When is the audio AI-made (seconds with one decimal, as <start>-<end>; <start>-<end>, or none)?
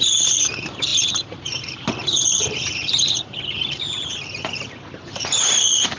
0.0-6.0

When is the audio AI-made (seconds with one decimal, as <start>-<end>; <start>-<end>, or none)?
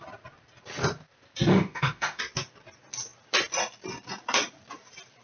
1.5-2.2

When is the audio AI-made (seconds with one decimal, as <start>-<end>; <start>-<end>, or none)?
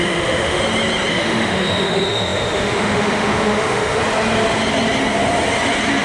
0.0-0.6; 1.1-4.0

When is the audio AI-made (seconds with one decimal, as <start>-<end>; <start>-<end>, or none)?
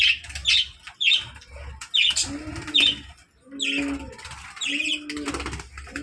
none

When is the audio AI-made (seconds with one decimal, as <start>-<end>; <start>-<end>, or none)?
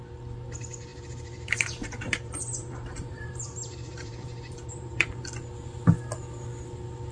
0.9-5.2